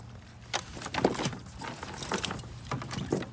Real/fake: real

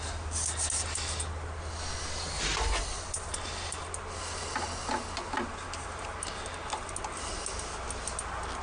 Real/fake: real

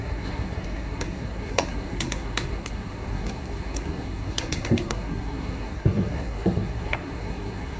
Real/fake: fake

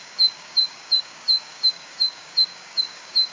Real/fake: fake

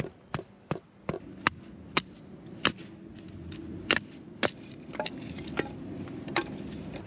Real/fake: real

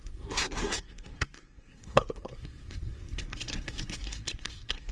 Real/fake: fake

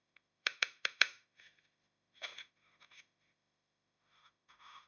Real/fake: fake